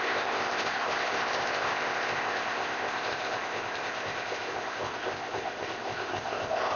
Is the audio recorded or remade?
remade